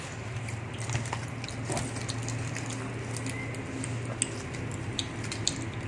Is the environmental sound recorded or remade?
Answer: recorded